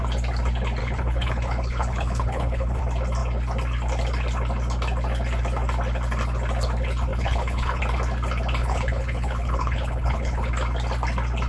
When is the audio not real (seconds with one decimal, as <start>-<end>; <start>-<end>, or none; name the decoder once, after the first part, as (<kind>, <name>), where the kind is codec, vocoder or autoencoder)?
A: 0.8-2.8 (codec, HILCodec); 7.1-7.8; 8.6-10.5